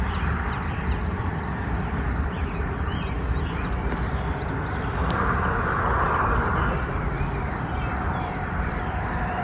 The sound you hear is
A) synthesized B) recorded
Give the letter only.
A